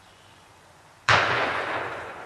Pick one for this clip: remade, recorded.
remade